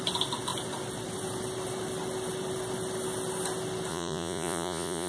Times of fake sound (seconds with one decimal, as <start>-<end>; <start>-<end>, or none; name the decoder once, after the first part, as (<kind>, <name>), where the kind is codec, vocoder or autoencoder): 3.9-5.1 (vocoder, Vocos)